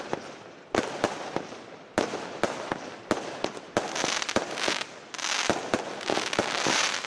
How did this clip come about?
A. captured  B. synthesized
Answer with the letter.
A